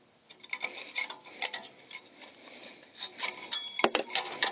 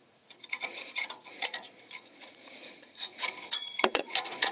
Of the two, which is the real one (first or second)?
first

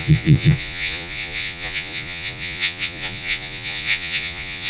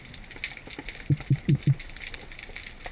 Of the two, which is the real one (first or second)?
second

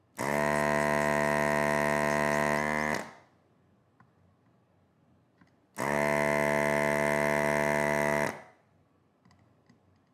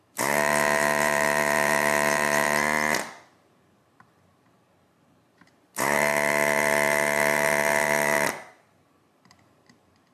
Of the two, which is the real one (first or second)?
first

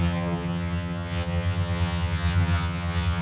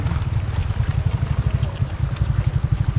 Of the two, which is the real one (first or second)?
second